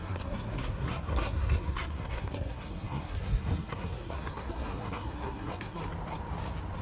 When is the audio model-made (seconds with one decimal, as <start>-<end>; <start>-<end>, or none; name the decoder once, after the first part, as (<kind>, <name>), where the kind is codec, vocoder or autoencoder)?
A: 0.0-5.8 (codec, SNAC)